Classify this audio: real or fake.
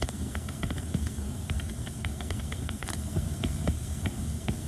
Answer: fake